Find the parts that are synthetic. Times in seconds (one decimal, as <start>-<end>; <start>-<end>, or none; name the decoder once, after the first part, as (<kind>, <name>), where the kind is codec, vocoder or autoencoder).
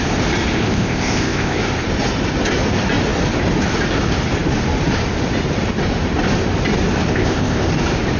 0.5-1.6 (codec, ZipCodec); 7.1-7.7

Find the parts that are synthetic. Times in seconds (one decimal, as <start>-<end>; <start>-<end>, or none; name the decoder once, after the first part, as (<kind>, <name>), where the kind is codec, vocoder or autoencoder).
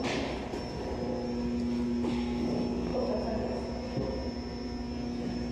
0.0-2.9 (vocoder, BigVGAN v2); 3.6-5.5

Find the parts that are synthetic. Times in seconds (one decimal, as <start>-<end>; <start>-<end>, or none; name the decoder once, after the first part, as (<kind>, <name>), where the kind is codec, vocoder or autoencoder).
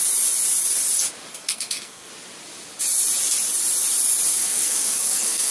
1.3-2.1 (codec, SNAC); 4.3-5.5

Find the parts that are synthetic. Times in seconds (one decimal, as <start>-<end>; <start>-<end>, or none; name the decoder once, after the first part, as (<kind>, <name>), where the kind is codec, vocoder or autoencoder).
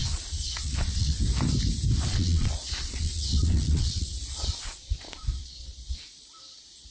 0.0-1.2 (vocoder, Vocos); 2.1-6.2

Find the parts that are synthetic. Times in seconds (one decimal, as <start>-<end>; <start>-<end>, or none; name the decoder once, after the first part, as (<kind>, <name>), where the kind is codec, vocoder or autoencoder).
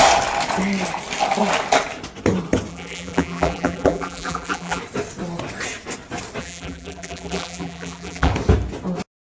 2.7-4.8 (vocoder, BigVGAN v2); 6.4-8.3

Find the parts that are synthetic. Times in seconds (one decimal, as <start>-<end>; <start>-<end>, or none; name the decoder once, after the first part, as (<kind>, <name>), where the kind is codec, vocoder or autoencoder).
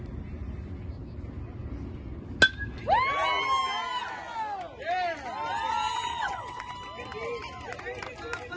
6.1-6.7 (vocoder, WaveNeXt)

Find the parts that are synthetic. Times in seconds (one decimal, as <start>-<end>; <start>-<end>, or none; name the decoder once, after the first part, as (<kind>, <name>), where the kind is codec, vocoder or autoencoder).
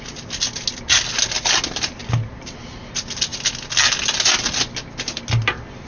none